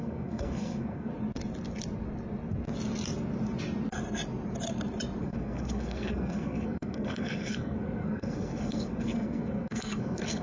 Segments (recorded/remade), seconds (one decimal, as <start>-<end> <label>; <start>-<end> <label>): 0.0-1.1 remade; 1.1-5.2 recorded; 5.2-10.4 remade